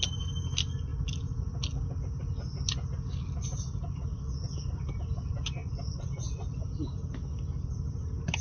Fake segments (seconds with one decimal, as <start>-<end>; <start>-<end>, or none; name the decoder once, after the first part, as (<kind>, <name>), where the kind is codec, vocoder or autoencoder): 0.9-1.6 (vocoder, BigVGAN v2); 5.6-7.1